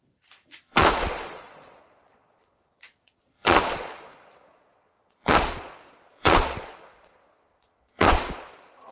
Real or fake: fake